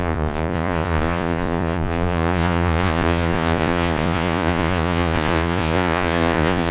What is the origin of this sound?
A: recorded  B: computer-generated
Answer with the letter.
B